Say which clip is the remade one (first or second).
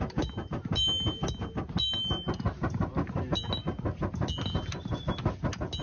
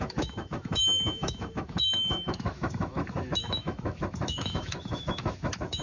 second